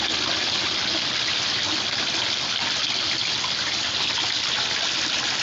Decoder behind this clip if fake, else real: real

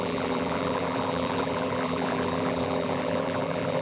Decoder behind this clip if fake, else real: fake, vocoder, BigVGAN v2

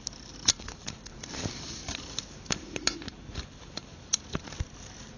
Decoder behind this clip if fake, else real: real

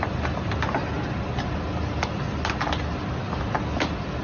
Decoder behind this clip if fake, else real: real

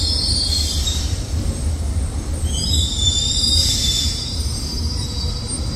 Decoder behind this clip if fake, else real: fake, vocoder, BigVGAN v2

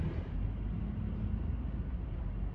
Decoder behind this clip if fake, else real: real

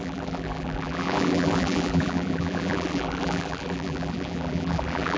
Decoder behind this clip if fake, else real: fake, vocoder, BigVGAN v2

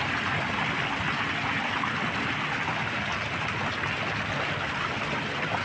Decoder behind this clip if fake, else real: real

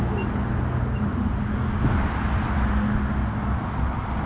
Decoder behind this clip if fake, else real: real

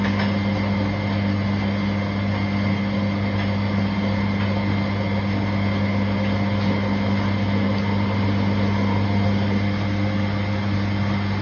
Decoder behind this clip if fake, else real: real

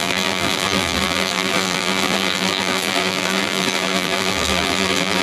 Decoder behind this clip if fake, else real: fake, vocoder, BigVGAN v2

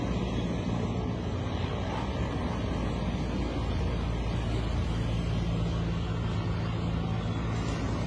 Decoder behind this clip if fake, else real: real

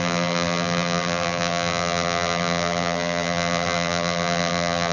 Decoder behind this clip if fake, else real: fake, vocoder, BigVGAN v2